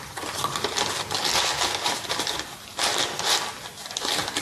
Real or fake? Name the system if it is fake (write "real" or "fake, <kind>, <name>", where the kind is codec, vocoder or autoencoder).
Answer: real